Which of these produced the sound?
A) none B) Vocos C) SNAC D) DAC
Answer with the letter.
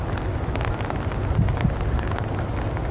A